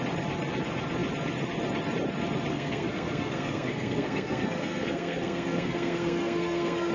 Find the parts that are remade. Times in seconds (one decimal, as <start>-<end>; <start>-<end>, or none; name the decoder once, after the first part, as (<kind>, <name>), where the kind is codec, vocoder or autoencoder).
2.5-6.9 (codec, SNAC)